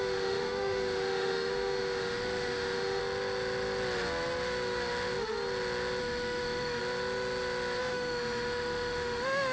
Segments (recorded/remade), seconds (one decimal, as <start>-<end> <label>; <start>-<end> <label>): 0.0-3.0 remade; 3.0-6.0 recorded; 6.0-6.8 remade; 6.8-7.8 recorded; 7.8-9.5 remade